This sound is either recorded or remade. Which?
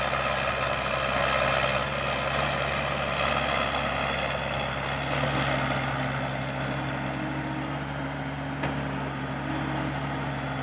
recorded